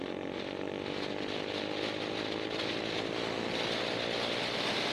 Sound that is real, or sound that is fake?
real